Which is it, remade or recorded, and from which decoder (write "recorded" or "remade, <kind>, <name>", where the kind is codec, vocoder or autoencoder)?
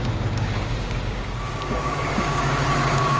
remade, codec, DAC